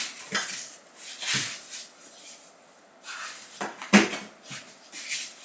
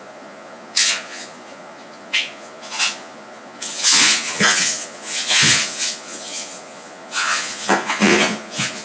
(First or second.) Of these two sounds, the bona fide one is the first